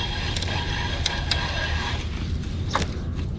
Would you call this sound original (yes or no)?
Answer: yes